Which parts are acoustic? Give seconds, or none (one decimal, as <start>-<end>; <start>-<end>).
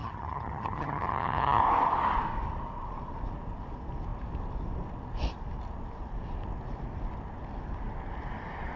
1.6-8.8